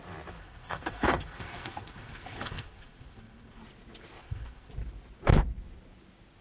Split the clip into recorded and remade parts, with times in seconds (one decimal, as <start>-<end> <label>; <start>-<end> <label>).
0.0-0.4 recorded; 0.4-3.6 remade; 3.6-4.2 recorded; 4.2-4.7 remade; 4.7-6.4 recorded